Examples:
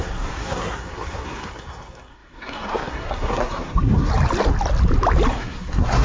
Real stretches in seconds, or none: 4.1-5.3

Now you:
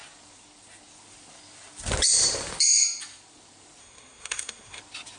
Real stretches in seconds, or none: 0.0-3.8; 4.8-5.2

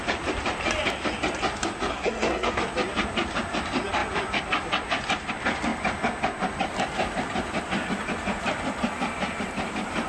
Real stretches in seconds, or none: 0.0-1.9; 2.6-10.1

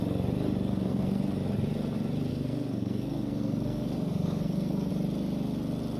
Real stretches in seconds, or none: 0.0-0.7; 1.2-2.3; 4.9-6.0

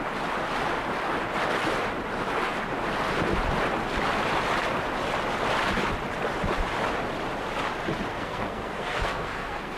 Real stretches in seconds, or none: 0.0-8.1

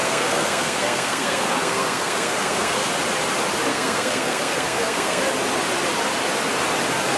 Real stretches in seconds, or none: 2.9-3.7; 5.2-7.2